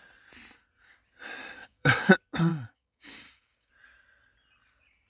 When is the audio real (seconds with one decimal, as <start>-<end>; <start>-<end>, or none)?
0.0-1.4; 2.1-2.5; 3.7-5.1